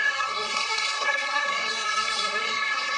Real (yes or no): no